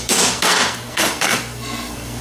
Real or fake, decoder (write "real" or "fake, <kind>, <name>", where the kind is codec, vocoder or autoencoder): fake, codec, SNAC